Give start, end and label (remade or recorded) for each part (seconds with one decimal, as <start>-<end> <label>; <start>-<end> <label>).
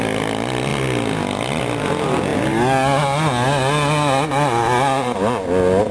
0.0-5.9 recorded